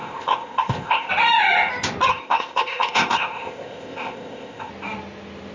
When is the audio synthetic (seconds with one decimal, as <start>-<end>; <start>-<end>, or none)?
0.0-1.1; 2.1-4.7